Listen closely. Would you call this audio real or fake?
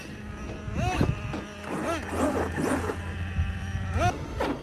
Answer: real